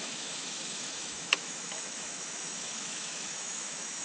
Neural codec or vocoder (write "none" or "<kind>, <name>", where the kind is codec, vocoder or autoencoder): autoencoder, DAC-VAE